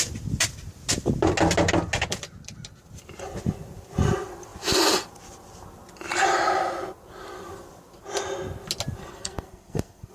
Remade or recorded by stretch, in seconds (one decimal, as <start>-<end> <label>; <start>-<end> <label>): 0.0-9.1 recorded; 9.1-10.1 remade